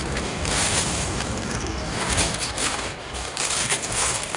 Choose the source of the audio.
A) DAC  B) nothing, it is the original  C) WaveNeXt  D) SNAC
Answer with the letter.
A